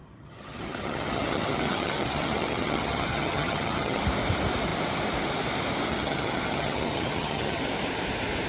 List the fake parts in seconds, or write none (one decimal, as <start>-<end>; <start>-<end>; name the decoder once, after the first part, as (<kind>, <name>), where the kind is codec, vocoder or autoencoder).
0.0-4.0 (vocoder, HiFi-GAN); 5.9-7.6